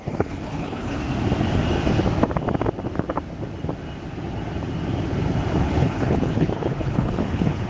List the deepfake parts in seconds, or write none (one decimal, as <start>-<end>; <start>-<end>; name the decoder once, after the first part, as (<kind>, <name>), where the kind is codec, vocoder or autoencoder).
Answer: 0.0-1.0 (codec, HILCodec); 5.6-7.7